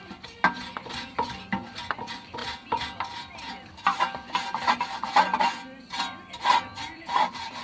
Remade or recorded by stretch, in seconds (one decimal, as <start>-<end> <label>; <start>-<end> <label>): 0.0-7.6 recorded